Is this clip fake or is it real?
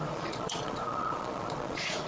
fake